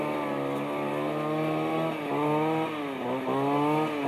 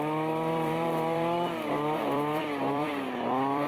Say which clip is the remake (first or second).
second